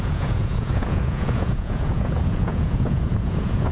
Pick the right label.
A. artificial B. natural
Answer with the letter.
A